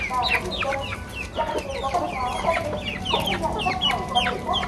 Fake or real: real